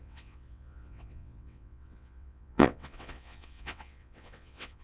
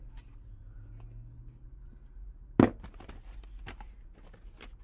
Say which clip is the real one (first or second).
second